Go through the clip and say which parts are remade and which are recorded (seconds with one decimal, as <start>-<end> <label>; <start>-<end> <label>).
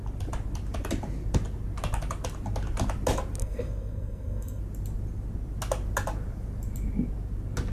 0.0-3.4 recorded; 3.4-4.6 remade; 4.6-7.7 recorded